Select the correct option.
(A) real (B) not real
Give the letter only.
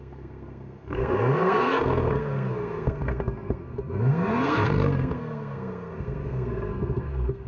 B